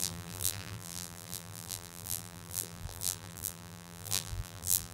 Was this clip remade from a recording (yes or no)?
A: yes